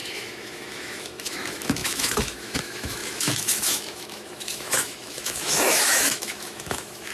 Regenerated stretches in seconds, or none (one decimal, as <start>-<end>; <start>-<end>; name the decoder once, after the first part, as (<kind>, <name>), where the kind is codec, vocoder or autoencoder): 0.0-7.1 (autoencoder, DAC-VAE)